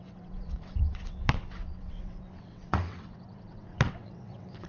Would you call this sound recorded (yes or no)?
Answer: no